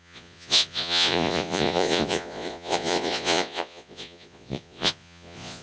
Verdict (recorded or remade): remade